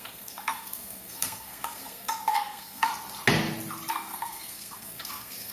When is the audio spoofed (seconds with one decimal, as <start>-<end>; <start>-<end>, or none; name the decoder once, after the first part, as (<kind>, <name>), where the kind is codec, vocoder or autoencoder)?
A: 0.0-2.9 (codec, SNAC); 3.9-5.5